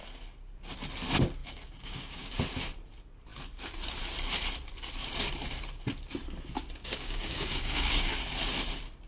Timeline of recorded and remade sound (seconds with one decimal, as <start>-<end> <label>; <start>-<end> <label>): 0.0-1.4 recorded; 1.4-2.3 remade; 2.3-6.8 recorded; 6.8-8.2 remade; 8.2-9.1 recorded